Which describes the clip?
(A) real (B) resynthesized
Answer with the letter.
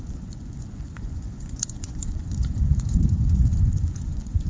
B